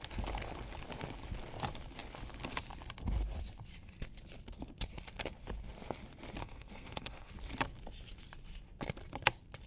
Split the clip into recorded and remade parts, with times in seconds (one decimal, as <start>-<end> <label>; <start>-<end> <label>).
0.0-6.4 recorded; 6.4-7.3 remade; 7.3-9.7 recorded